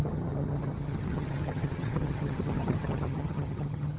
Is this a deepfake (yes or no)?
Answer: yes